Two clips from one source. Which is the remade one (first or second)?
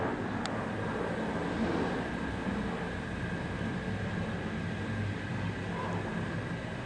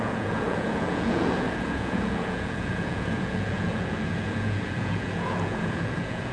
second